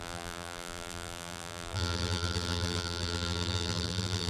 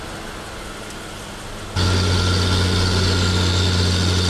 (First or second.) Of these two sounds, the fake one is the first